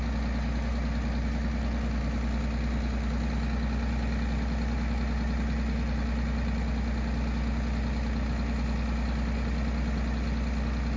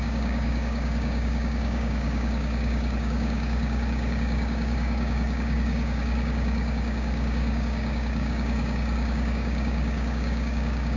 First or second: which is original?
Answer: first